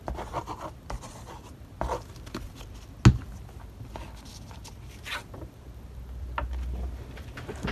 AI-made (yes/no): no